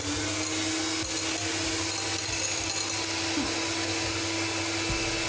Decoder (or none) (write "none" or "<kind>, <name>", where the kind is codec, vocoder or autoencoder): none